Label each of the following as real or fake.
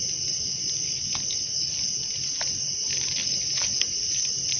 real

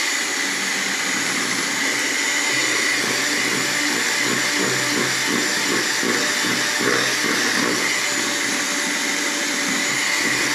real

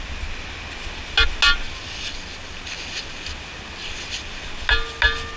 real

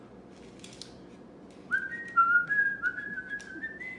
real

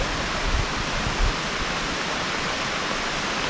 real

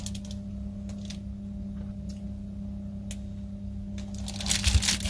real